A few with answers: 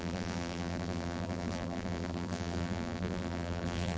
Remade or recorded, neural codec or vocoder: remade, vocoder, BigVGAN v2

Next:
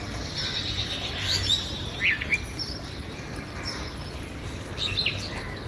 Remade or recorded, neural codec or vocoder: recorded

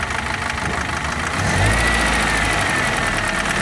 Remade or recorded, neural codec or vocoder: recorded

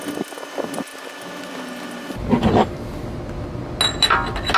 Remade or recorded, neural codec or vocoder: recorded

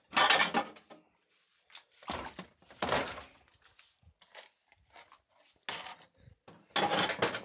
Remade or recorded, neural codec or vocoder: recorded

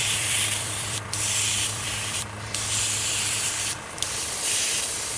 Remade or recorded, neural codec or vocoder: remade, vocoder, BigVGAN v2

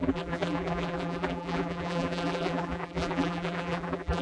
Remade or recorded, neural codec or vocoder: remade, vocoder, BigVGAN v2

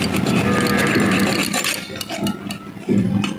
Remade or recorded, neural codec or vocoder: recorded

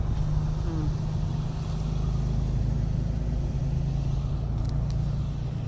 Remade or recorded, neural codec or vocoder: recorded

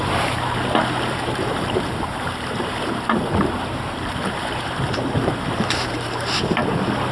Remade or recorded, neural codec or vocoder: remade, vocoder, BigVGAN v2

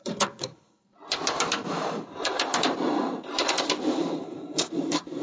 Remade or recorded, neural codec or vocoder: remade, vocoder, BigVGAN v2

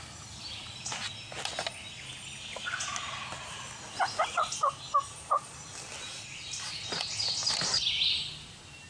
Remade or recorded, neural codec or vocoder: recorded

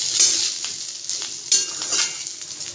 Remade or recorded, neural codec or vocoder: recorded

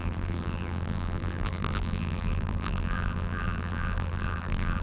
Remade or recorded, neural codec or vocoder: remade, vocoder, BigVGAN v2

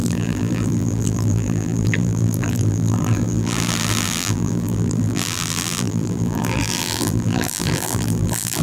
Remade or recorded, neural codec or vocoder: remade, vocoder, BigVGAN v2